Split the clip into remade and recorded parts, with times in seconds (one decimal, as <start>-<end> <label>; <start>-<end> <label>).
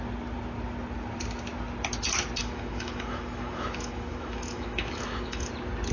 0.0-2.4 recorded; 2.4-5.5 remade; 5.5-5.9 recorded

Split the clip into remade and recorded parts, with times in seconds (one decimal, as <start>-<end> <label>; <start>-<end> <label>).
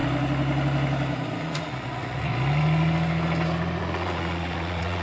0.0-1.4 recorded; 1.4-2.3 remade; 2.3-3.8 recorded; 3.8-5.0 remade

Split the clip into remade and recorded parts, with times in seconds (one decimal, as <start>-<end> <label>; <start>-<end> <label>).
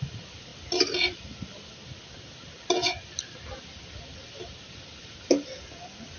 0.0-6.2 recorded